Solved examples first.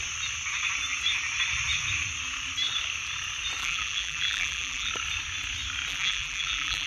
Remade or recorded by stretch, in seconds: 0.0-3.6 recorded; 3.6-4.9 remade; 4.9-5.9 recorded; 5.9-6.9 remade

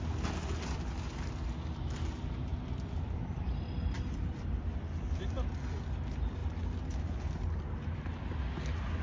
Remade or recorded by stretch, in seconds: 0.0-2.5 recorded; 2.5-5.6 remade; 5.6-9.0 recorded

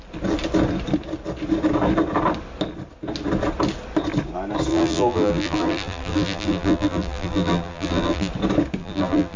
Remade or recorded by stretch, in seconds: 0.0-4.7 recorded; 4.7-8.3 remade; 8.3-8.8 recorded; 8.8-9.4 remade